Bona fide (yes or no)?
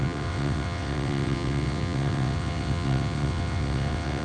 no